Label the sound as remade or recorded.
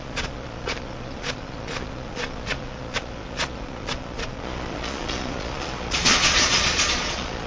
remade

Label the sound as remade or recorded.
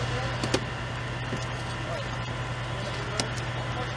recorded